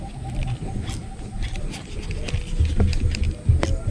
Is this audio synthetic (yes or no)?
no